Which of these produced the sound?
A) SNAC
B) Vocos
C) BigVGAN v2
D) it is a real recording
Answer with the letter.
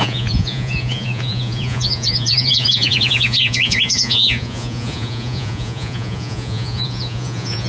B